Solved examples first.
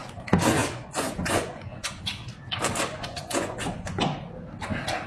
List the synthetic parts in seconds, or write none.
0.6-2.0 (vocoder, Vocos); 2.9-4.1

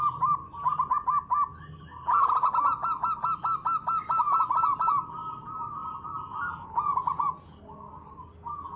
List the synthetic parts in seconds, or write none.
6.3-7.6 (vocoder, Vocos)

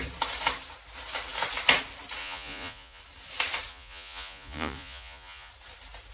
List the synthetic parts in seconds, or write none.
2.2-3.0 (vocoder, Vocos); 3.7-5.5

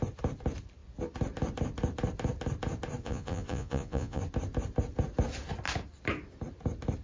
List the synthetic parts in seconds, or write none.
3.0-4.2 (vocoder, Vocos)

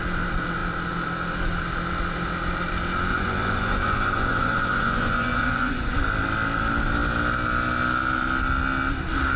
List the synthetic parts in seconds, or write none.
3.1-6.0 (vocoder, Vocos)